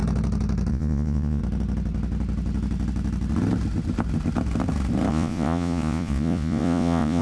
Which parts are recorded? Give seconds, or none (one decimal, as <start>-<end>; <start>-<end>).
0.0-0.7; 1.4-5.1